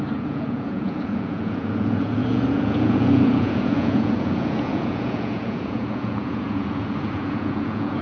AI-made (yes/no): yes